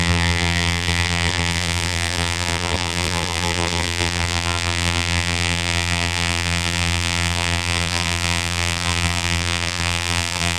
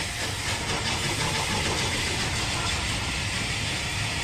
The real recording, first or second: second